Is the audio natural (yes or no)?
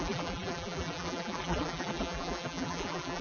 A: no